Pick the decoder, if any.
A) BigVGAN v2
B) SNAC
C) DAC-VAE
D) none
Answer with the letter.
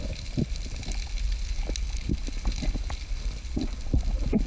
D